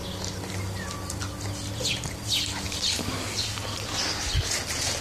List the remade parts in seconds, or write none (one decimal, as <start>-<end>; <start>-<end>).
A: none